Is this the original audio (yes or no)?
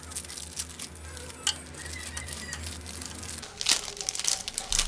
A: yes